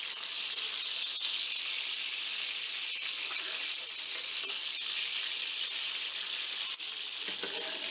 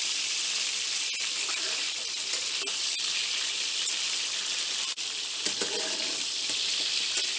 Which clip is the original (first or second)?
first